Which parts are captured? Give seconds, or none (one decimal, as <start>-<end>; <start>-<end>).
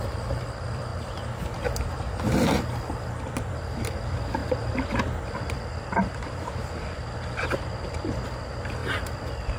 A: 0.9-1.9; 8.8-9.6